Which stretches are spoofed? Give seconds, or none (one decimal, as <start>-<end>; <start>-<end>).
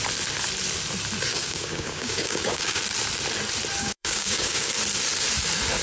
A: 1.3-2.8; 3.8-4.7